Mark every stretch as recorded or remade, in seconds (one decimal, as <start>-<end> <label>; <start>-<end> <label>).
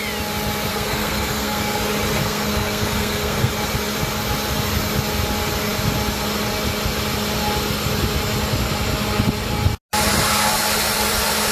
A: 0.0-0.7 recorded; 0.7-1.8 remade; 1.8-2.2 recorded; 2.2-3.5 remade; 3.5-11.5 recorded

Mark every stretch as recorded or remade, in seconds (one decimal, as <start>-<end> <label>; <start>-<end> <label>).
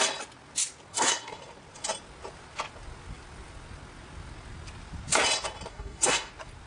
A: 0.0-0.9 recorded; 0.9-1.4 remade; 1.4-5.7 recorded; 5.7-6.3 remade; 6.3-6.7 recorded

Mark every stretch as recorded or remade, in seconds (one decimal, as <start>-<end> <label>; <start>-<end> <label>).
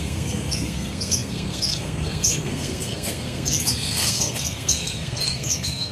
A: 0.0-5.9 remade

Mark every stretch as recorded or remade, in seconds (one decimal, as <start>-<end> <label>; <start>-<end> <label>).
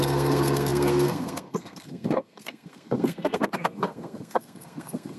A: 0.0-5.2 remade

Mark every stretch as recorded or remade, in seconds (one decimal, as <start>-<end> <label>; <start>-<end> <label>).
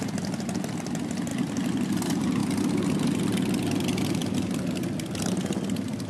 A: 0.0-6.1 recorded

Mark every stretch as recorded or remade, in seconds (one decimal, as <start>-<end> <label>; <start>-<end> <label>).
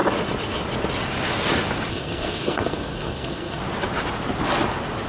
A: 0.0-1.9 recorded; 1.9-3.6 remade; 3.6-5.1 recorded